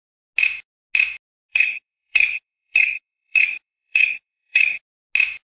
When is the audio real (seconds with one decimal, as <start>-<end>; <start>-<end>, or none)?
0.0-1.5; 4.8-5.5